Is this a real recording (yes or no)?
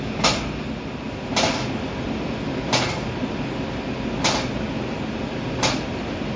yes